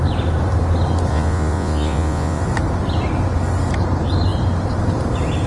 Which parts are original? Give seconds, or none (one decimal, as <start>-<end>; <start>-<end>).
0.0-1.1; 2.4-5.5

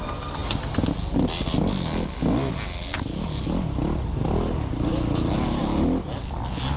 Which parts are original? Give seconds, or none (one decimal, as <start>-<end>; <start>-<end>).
0.0-6.8

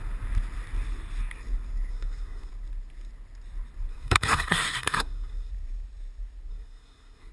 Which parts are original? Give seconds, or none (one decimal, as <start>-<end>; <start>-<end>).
0.0-1.9; 2.5-3.9; 5.5-6.5

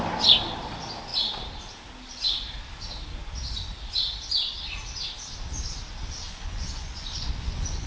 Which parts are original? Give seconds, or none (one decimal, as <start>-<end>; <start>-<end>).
0.0-6.2

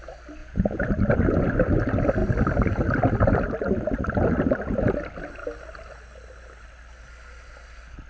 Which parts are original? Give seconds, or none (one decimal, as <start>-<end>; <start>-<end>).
0.0-0.4; 0.9-8.1

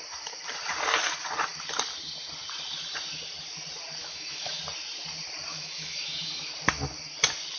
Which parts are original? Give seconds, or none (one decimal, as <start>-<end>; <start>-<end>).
0.0-4.0; 4.6-5.5; 6.5-7.6

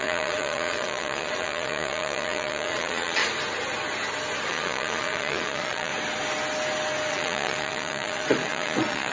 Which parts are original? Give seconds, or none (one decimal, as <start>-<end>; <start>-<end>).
3.2-4.5; 5.9-7.1